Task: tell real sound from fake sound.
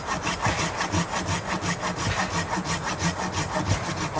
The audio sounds real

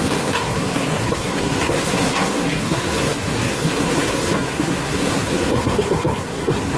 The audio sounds fake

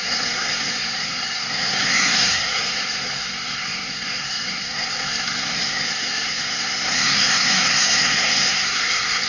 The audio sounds fake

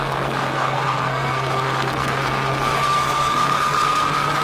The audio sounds fake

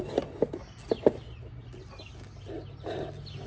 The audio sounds real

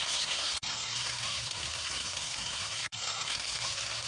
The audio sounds fake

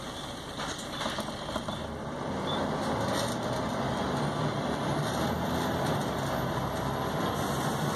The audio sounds real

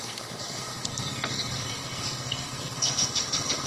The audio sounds fake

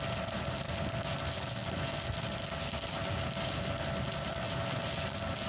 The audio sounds real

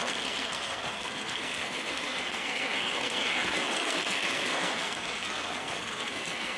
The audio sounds fake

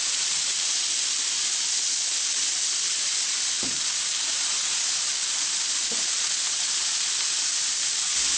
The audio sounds real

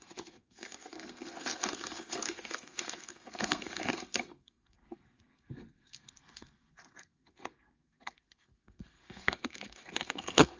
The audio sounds fake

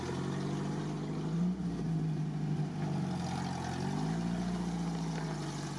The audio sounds real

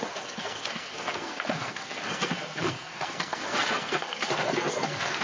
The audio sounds fake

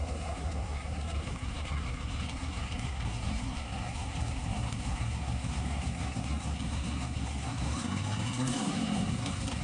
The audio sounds fake